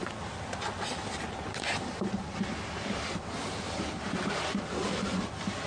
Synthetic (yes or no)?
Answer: no